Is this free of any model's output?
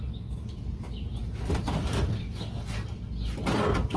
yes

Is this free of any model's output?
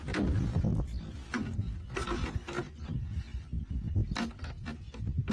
yes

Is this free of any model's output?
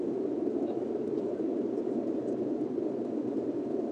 yes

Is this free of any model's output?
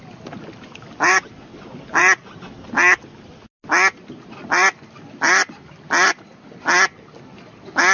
yes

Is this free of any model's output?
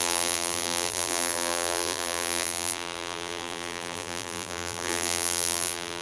no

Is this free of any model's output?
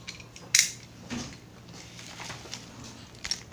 yes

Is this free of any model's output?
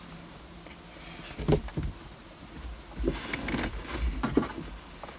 yes